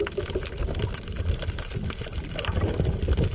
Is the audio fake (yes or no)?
no